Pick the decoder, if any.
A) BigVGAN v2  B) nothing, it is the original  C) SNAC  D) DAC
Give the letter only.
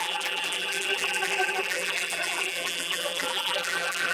A